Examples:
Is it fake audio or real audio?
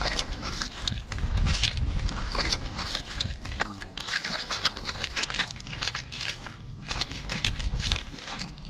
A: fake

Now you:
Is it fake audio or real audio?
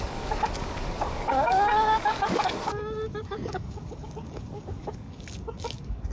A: fake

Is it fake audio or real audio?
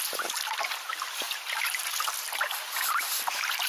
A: real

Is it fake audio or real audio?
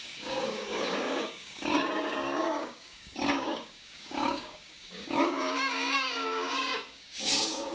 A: fake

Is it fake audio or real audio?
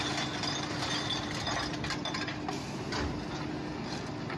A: real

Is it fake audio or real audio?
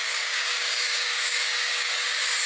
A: fake